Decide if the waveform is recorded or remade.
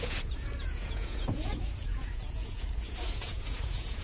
remade